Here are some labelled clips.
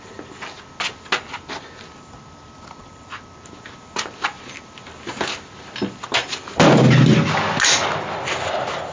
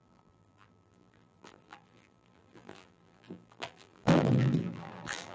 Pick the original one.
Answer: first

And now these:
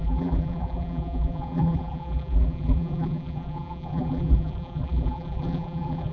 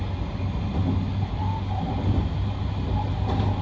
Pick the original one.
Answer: second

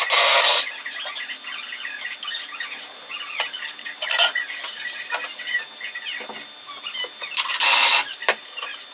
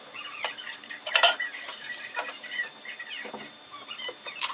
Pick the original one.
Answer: first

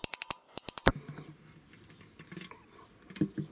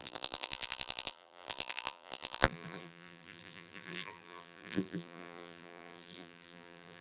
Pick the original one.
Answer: first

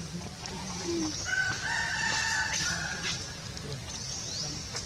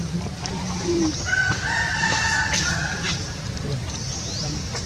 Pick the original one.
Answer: first